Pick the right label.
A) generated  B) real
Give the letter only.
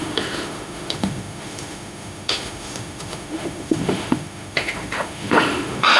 A